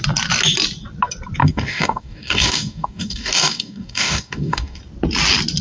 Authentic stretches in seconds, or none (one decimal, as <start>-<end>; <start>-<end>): 0.0-1.4; 4.8-5.6